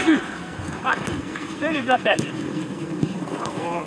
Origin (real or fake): fake